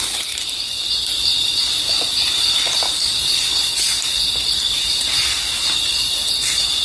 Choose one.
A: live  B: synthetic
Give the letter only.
A